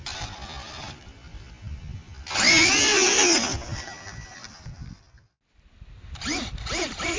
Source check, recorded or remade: recorded